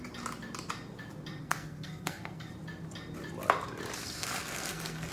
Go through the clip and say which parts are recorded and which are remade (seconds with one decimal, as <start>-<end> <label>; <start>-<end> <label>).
0.0-1.4 recorded; 1.4-2.5 remade; 2.5-4.0 recorded; 4.0-5.1 remade